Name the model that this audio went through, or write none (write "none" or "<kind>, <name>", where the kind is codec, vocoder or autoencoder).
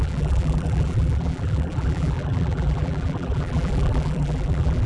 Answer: vocoder, BigVGAN v2